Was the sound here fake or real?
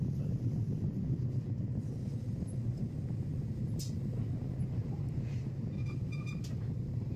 real